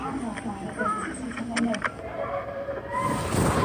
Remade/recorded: recorded